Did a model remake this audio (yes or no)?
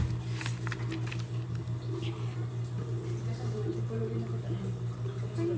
no